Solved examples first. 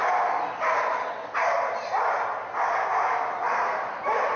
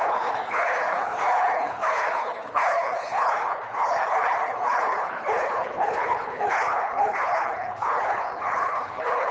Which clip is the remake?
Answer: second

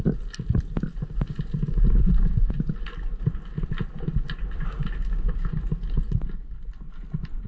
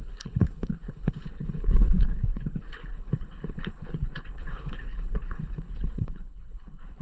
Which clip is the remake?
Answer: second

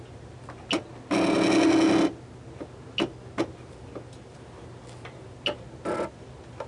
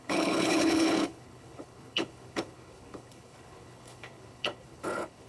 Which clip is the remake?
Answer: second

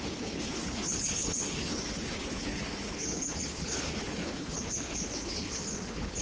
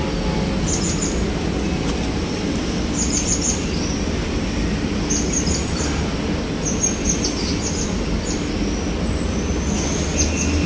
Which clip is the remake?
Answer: first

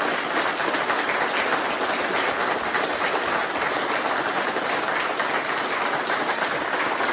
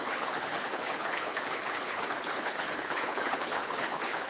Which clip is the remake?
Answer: second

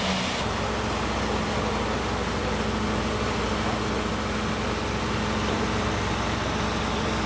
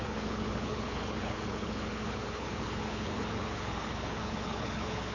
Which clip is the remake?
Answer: second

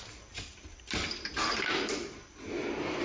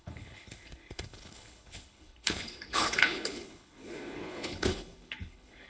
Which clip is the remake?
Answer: second